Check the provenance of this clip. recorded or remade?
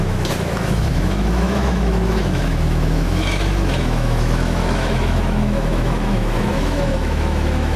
remade